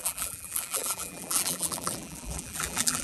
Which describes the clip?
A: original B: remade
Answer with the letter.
B